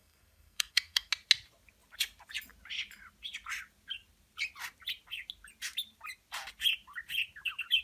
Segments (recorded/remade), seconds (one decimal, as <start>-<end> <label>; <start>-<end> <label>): 0.0-1.1 remade; 1.1-7.8 recorded